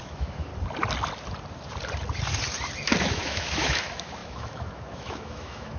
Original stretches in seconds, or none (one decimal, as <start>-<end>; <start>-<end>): 0.5-3.0